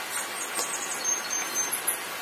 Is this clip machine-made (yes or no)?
no